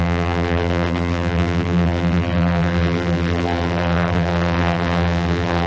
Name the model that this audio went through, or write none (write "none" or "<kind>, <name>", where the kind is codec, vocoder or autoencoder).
vocoder, BigVGAN v2